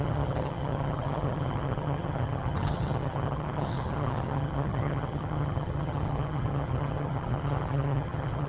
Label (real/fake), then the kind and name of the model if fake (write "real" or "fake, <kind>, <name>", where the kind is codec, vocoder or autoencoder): fake, vocoder, HiFi-GAN